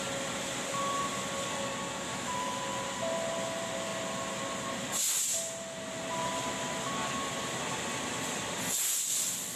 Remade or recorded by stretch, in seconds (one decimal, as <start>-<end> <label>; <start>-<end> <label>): 0.0-2.1 recorded; 2.1-2.6 remade; 2.6-9.6 recorded